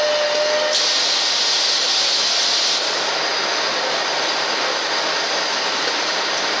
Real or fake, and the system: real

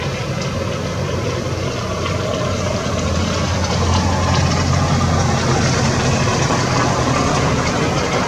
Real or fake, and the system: real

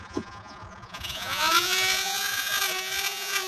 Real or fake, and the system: fake, vocoder, Vocos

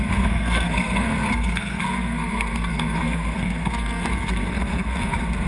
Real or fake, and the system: fake, codec, SNAC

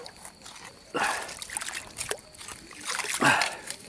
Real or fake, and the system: real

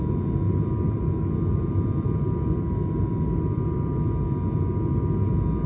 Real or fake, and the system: real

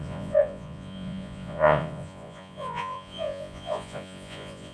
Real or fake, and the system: fake, vocoder, Vocos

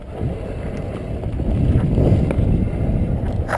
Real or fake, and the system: real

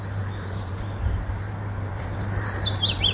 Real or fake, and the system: fake, vocoder, BigVGAN v2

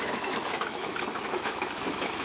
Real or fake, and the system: fake, autoencoder, DAC-VAE